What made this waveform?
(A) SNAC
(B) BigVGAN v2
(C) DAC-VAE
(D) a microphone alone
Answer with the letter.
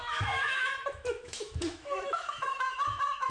C